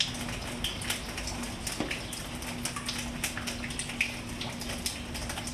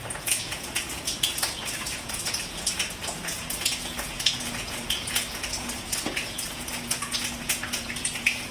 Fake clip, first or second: second